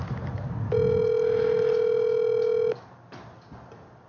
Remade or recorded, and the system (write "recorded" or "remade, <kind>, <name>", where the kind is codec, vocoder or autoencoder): recorded